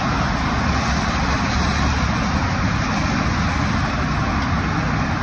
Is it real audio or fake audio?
real